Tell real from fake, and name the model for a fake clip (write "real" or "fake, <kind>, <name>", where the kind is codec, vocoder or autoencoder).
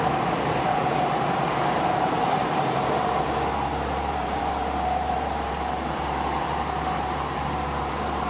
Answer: fake, vocoder, BigVGAN v2